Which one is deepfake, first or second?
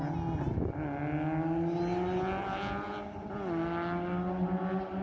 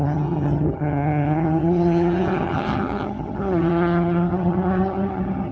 second